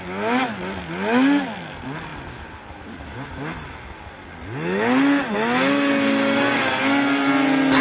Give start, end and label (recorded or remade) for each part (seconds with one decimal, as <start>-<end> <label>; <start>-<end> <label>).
0.0-7.8 recorded